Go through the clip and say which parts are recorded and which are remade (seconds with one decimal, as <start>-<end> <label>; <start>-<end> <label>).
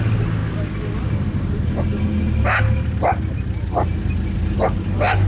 0.0-5.3 recorded